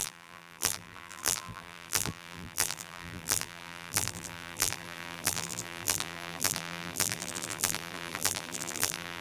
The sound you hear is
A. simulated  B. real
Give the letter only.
A